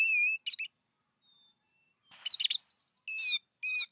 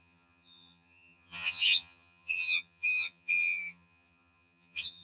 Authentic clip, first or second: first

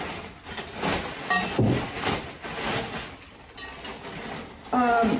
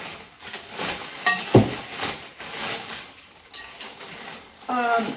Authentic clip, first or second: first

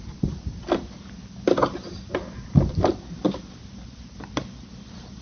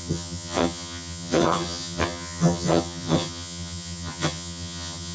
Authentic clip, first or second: first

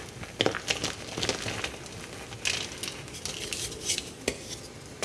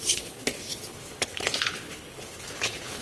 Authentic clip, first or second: first